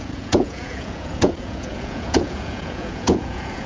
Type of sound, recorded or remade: remade